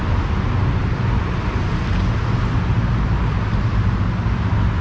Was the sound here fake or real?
real